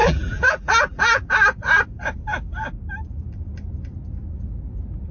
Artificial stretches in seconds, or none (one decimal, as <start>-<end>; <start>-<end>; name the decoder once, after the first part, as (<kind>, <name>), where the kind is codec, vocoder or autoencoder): 0.0-1.3 (vocoder, BigVGAN v2)